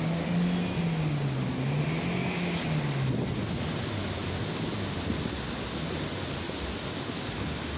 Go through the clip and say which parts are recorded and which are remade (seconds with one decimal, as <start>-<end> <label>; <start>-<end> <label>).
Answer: 0.0-7.8 recorded